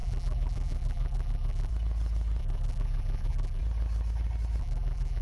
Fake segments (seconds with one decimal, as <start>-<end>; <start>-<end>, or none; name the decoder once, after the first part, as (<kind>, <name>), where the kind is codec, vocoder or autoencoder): 0.0-1.7 (vocoder, BigVGAN v2); 2.4-3.6; 4.6-5.2